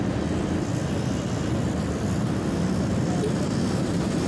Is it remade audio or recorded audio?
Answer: recorded